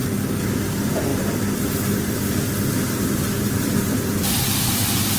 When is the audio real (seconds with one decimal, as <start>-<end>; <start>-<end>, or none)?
0.0-0.5